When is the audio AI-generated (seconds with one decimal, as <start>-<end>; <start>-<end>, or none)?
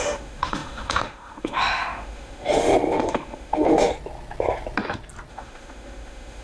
0.0-3.9; 5.3-6.4